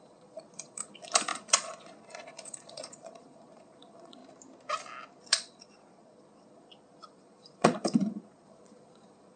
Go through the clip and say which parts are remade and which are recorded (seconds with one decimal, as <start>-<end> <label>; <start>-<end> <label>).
0.0-4.2 remade; 4.2-5.2 recorded; 5.2-9.4 remade